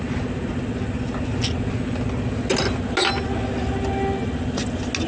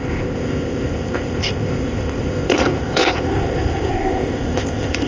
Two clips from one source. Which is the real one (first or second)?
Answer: first